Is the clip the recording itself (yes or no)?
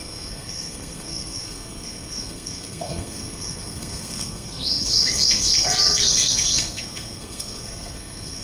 no